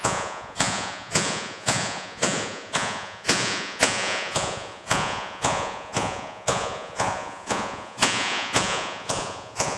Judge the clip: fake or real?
fake